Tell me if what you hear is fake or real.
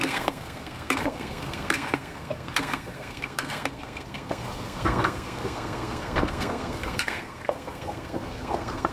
fake